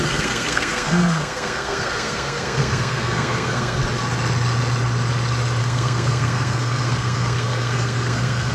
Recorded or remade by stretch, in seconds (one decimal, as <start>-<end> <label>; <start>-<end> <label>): 0.0-3.8 remade; 3.8-5.6 recorded; 5.6-8.5 remade